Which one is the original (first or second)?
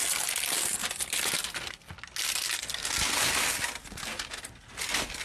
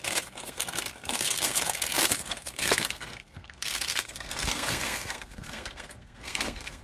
first